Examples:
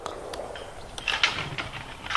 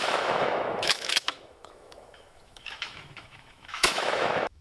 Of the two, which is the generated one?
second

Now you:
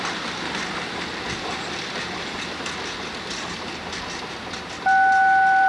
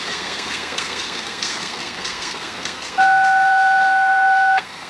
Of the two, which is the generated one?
second